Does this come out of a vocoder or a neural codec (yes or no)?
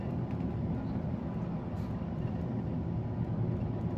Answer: no